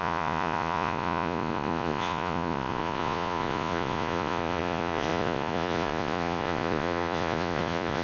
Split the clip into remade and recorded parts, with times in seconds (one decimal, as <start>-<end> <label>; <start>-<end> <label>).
0.0-8.0 remade